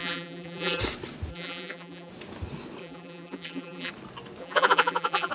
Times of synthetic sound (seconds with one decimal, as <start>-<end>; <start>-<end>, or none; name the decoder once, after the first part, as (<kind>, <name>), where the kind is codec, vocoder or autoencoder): 0.0-0.8 (vocoder, BigVGAN v2); 1.3-2.1; 2.8-3.9; 4.4-5.3